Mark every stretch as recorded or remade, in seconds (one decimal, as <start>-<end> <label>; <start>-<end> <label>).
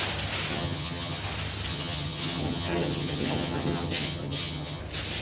0.0-0.5 recorded; 0.5-1.2 remade; 1.2-1.7 recorded; 1.7-4.8 remade; 4.8-5.2 recorded